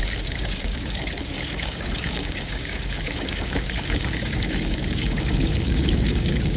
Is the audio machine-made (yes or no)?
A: yes